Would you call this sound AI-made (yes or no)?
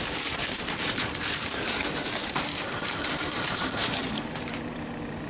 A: yes